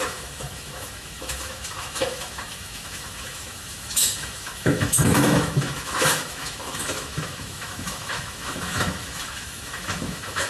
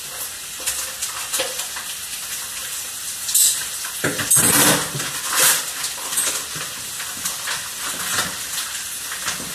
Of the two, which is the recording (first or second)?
second